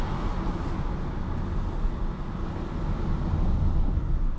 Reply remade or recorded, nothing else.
recorded